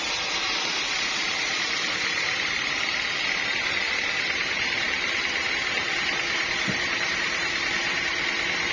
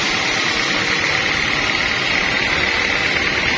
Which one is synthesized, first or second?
first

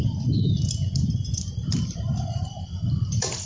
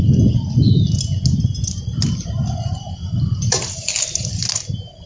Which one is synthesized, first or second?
first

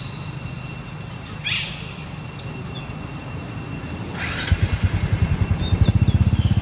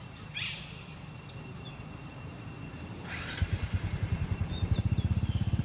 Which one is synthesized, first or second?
second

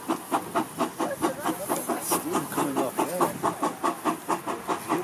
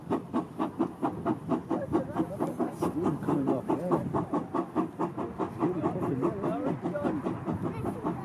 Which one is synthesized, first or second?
second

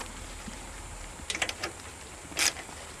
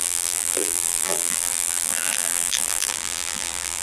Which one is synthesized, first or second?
second